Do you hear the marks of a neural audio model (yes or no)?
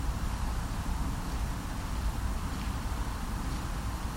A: no